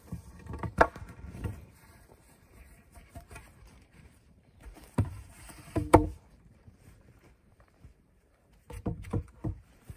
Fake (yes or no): yes